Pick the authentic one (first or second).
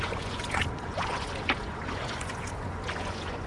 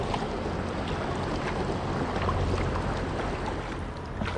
second